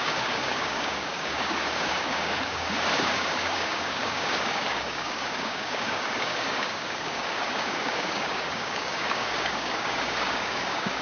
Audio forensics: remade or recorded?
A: remade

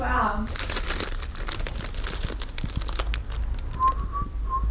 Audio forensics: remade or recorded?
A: recorded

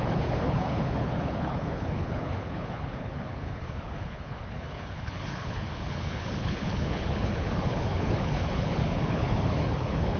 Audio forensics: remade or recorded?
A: remade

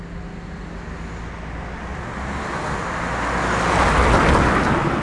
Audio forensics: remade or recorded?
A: recorded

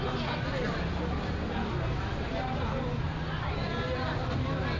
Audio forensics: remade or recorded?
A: recorded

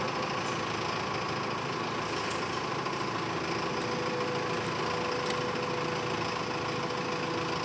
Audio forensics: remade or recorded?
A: recorded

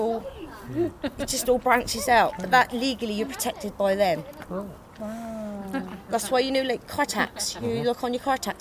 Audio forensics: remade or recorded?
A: recorded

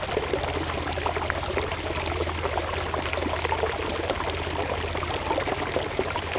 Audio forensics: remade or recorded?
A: recorded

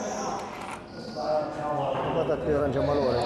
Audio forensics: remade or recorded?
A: recorded